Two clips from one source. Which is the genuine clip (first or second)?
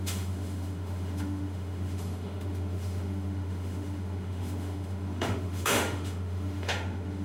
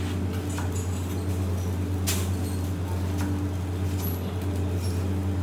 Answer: second